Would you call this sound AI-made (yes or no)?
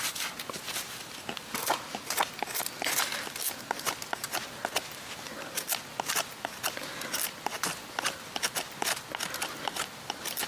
no